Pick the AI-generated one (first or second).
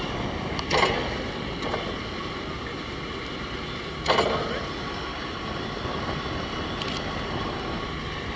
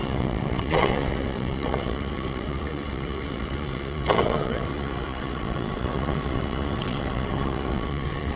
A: second